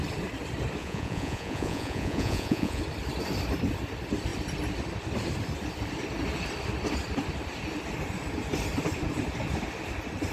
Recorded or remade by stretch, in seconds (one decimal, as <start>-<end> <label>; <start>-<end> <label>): 0.0-0.8 recorded; 0.8-2.8 remade; 2.8-10.3 recorded